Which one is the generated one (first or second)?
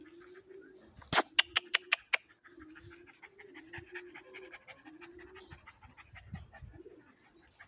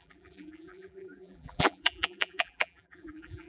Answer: second